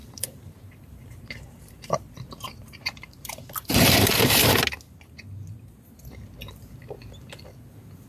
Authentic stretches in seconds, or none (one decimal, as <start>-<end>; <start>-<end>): 4.2-8.1